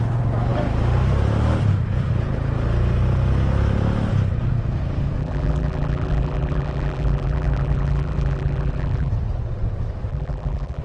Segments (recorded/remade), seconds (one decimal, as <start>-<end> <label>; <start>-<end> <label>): 0.0-5.2 recorded; 5.2-9.1 remade; 9.1-10.1 recorded; 10.1-10.8 remade

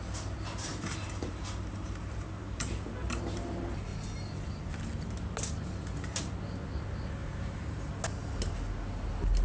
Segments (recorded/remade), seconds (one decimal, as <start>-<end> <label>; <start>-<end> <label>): 0.0-0.7 recorded; 0.7-2.7 remade; 2.7-3.9 recorded; 3.9-4.7 remade; 4.7-7.2 recorded; 7.2-7.9 remade; 7.9-9.4 recorded

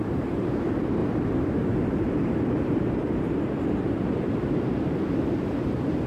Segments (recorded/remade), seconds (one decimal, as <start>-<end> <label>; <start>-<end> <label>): 0.0-6.1 remade

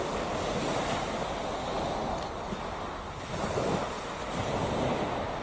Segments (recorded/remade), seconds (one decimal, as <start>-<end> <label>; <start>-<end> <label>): 0.0-5.4 recorded

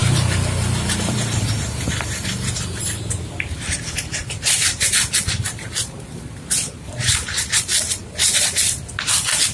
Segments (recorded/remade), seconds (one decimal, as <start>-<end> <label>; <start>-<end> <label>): 0.0-2.8 remade; 2.8-4.2 recorded; 4.2-6.9 remade; 6.9-9.5 recorded